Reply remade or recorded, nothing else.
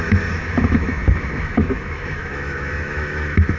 remade